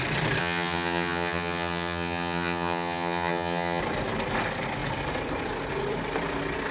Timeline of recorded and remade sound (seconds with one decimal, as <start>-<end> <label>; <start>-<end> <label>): 0.0-0.4 recorded; 0.4-3.8 remade; 3.8-6.7 recorded